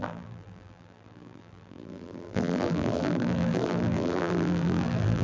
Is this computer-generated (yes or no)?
yes